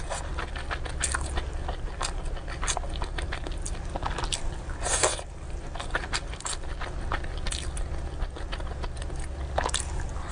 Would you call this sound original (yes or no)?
yes